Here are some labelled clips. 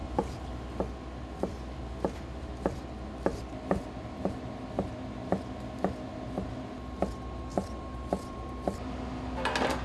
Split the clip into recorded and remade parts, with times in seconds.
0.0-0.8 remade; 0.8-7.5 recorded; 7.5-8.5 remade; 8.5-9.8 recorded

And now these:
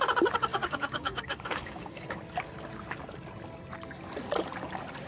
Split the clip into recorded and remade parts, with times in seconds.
0.0-0.5 recorded; 0.5-2.2 remade; 2.2-5.1 recorded